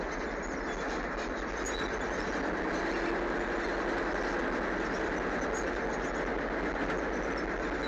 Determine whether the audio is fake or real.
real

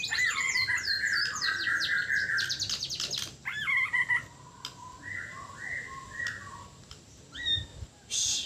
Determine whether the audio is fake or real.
real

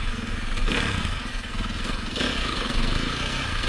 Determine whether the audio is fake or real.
fake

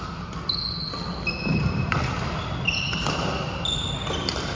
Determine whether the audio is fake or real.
real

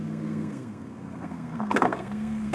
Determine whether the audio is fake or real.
fake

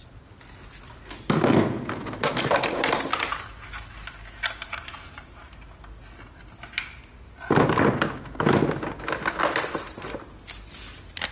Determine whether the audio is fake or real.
real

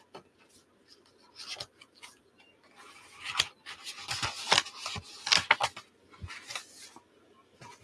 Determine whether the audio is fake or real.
real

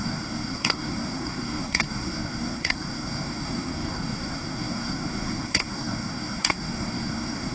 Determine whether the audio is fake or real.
fake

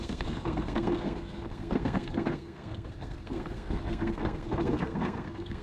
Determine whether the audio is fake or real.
fake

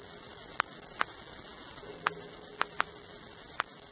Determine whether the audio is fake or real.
real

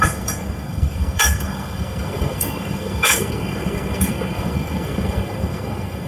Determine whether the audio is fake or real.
fake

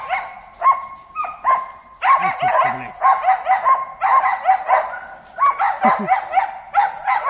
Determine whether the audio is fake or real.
real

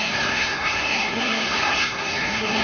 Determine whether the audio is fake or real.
fake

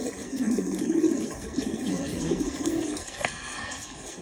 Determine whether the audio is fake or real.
fake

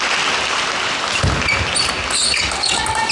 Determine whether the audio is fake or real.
real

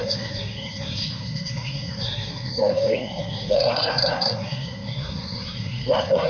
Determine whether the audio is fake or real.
fake